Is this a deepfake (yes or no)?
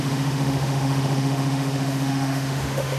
yes